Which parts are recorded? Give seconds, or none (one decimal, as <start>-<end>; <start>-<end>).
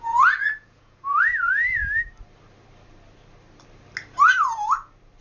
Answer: 1.8-5.2